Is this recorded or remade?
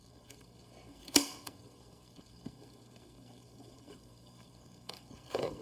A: remade